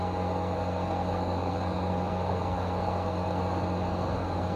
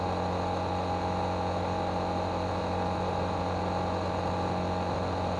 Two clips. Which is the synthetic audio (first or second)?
first